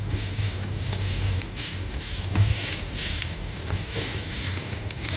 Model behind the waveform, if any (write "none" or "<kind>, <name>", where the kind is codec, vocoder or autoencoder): codec, DAC